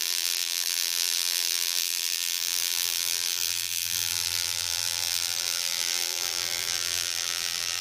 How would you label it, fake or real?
fake